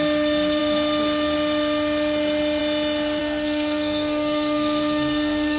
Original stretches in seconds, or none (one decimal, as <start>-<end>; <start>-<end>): 0.0-3.2